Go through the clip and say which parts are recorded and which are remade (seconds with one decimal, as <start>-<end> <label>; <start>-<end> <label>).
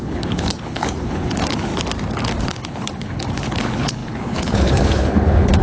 0.0-1.7 remade; 1.7-2.4 recorded; 2.4-5.6 remade